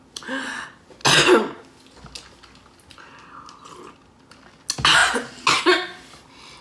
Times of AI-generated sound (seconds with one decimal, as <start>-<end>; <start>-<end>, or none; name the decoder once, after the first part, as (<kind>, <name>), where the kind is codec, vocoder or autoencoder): none